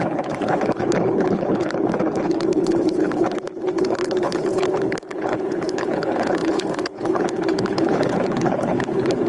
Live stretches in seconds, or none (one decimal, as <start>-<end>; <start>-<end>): none